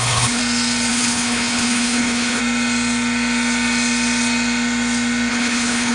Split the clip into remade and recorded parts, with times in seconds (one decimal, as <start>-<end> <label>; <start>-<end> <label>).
0.0-0.4 remade; 0.4-0.9 recorded; 0.9-2.4 remade; 2.4-5.3 recorded; 5.3-5.9 remade